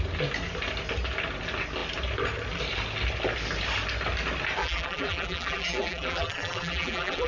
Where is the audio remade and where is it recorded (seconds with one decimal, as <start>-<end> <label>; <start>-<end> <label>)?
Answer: 0.0-4.6 recorded; 4.6-7.3 remade